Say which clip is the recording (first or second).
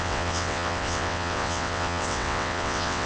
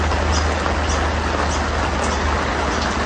second